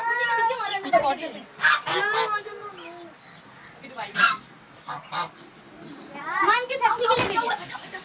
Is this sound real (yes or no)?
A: yes